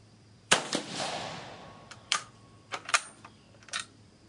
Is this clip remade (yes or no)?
yes